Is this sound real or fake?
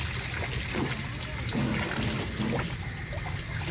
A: real